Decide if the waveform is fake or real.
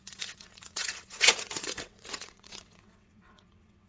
fake